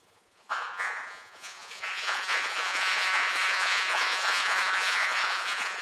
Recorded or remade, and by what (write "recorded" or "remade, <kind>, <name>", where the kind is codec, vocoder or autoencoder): remade, vocoder, Vocos